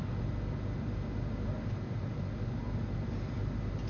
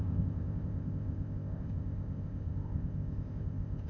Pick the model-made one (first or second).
second